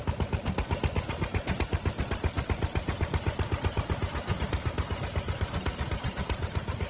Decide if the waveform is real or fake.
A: real